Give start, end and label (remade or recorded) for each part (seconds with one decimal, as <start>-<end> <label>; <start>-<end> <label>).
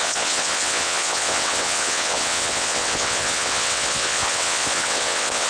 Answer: 0.0-5.5 remade